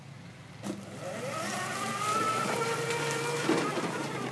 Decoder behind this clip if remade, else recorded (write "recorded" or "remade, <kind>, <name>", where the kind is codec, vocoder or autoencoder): recorded